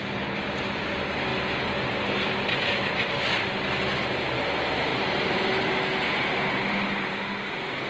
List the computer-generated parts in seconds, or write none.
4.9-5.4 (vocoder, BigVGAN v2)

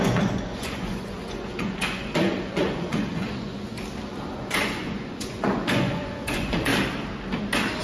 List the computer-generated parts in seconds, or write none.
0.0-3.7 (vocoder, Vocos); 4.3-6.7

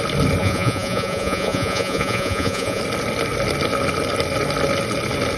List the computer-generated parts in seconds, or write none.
0.4-2.8 (vocoder, Vocos)

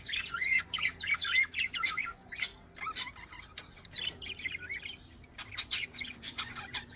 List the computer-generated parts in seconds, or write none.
0.0-0.9 (vocoder, Vocos); 1.6-2.5; 5.6-7.0

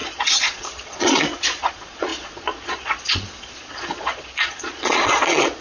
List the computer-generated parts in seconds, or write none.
0.0-5.6 (vocoder, Vocos)